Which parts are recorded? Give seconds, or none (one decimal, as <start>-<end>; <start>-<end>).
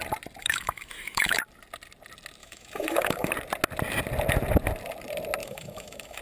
0.0-0.4; 1.4-2.4; 3.3-5.4